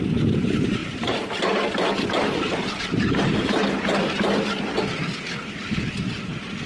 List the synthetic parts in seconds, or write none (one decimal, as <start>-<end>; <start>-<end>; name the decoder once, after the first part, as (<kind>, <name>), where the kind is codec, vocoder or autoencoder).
0.8-4.8 (vocoder, BigVGAN v2)